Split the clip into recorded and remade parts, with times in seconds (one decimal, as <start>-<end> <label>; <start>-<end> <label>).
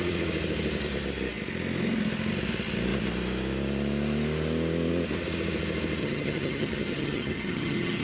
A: 0.0-6.0 recorded; 6.0-8.0 remade